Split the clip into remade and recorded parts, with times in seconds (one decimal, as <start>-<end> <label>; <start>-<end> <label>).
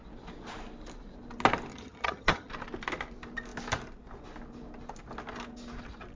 0.0-1.7 recorded; 1.7-2.5 remade; 2.5-6.2 recorded